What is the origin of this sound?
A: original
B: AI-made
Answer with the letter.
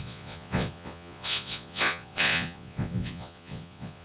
B